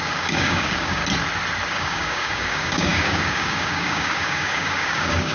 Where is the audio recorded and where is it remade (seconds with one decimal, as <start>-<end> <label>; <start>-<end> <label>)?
0.0-1.0 remade; 1.0-1.7 recorded; 1.7-5.3 remade